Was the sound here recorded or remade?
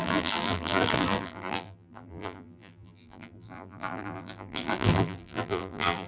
remade